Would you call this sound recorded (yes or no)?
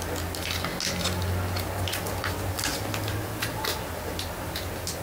yes